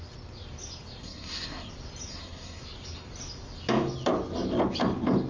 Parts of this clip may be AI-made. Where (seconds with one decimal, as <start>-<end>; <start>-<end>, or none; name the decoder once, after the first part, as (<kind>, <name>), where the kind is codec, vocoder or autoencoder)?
1.0-1.7 (codec, SNAC); 2.1-2.6